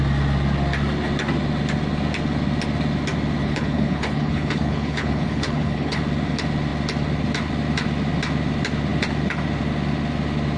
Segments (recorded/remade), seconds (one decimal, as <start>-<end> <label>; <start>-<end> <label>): 0.0-3.4 recorded; 3.4-6.0 remade; 6.0-10.6 recorded